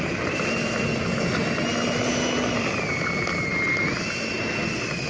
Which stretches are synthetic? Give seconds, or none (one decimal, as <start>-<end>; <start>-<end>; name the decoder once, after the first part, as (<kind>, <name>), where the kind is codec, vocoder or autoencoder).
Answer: none